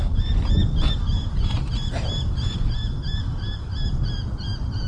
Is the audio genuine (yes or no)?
yes